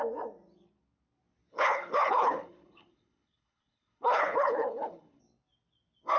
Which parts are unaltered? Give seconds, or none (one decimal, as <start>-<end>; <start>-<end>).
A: 0.0-1.5; 5.2-6.2